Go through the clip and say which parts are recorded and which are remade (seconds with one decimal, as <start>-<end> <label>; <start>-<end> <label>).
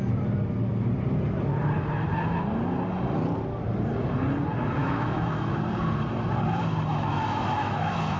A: 0.0-4.8 recorded; 4.8-5.5 remade; 5.5-6.9 recorded; 6.9-8.2 remade